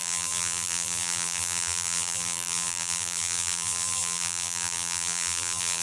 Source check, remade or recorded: remade